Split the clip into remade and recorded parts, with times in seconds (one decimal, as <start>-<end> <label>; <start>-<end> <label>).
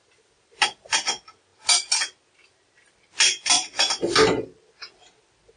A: 0.0-0.9 remade; 0.9-5.6 recorded